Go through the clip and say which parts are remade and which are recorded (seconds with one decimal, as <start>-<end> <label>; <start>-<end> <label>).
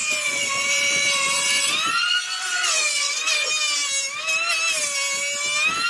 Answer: 0.0-3.5 remade; 3.5-5.9 recorded